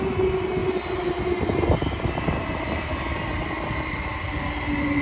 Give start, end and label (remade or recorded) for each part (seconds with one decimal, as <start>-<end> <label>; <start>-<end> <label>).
0.0-5.0 recorded